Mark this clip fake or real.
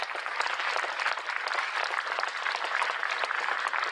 real